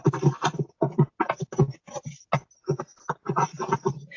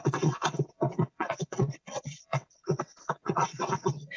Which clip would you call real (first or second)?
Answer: first